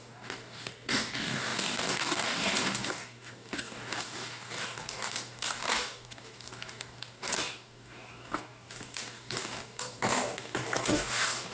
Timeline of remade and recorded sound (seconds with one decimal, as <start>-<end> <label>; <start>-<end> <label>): 0.0-11.5 remade